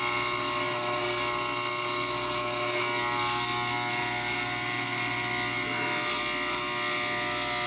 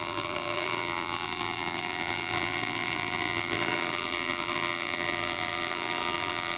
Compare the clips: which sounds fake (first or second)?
second